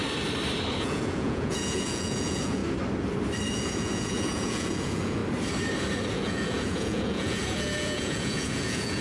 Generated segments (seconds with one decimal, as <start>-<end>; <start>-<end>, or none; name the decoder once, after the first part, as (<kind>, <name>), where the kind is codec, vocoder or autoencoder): 0.8-2.6 (vocoder, Vocos); 3.5-5.2; 6.1-9.0